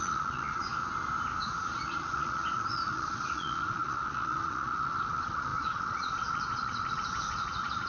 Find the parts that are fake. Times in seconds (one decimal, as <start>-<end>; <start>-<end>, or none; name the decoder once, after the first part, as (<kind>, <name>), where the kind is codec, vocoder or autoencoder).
0.0-0.7 (vocoder, Vocos); 1.4-7.9